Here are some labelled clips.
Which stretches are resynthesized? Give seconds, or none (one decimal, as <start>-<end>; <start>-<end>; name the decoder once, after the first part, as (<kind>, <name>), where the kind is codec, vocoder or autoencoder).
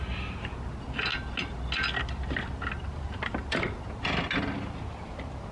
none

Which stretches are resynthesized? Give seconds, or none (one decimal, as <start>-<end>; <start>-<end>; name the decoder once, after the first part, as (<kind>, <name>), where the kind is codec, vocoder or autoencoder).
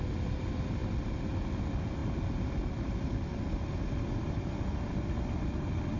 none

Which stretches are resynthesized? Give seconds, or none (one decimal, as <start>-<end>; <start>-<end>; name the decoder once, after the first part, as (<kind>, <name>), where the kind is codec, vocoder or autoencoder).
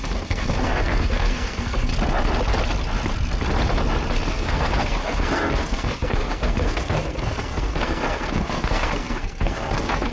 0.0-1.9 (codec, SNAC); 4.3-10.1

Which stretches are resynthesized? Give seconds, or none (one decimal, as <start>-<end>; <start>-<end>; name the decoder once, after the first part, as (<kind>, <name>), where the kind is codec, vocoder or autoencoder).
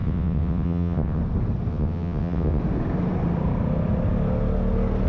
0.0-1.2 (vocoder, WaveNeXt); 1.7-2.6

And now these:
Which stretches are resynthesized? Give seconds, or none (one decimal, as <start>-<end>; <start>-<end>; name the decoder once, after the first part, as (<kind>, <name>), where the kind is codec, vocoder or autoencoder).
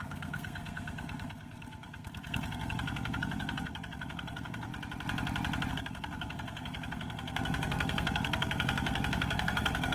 0.0-4.7 (codec, SNAC); 5.7-9.9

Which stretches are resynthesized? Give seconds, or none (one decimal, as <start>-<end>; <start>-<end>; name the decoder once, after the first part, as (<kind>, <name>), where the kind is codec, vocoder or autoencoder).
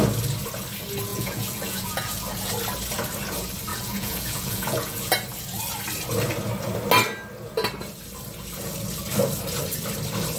1.1-2.5 (vocoder, Vocos); 3.7-5.1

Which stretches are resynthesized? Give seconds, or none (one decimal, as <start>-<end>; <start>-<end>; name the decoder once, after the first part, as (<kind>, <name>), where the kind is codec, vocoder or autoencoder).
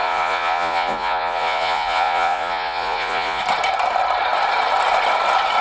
0.0-3.4 (vocoder, Vocos)